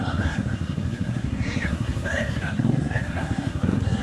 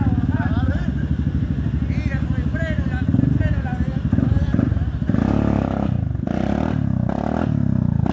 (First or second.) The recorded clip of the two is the second